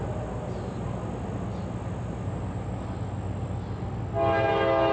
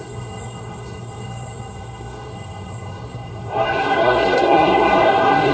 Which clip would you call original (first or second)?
first